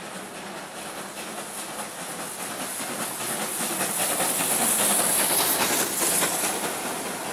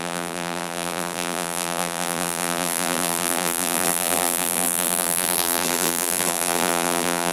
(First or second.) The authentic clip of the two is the first